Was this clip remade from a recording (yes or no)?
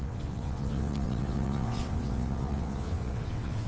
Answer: yes